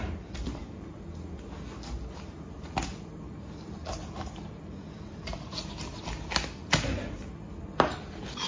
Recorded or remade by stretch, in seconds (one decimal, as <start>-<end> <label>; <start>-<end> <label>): 0.0-8.5 recorded